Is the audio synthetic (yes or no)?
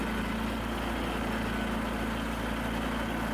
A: no